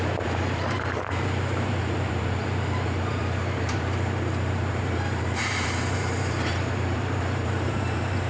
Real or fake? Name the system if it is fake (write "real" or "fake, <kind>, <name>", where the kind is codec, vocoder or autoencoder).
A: fake, vocoder, BigVGAN v2